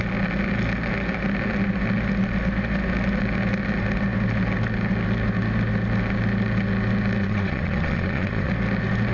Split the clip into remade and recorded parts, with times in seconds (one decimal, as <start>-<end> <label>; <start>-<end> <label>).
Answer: 0.0-7.2 recorded; 7.2-8.5 remade; 8.5-9.1 recorded